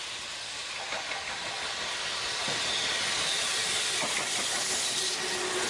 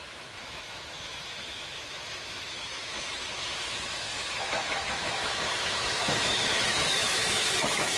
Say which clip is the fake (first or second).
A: second